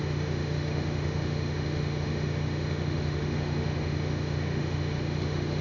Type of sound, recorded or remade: remade